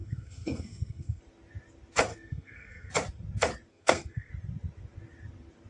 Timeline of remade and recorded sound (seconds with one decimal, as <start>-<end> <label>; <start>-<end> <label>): 0.0-1.2 remade; 1.2-2.1 recorded; 2.1-2.9 remade; 2.9-3.7 recorded; 3.7-4.3 remade; 4.3-5.7 recorded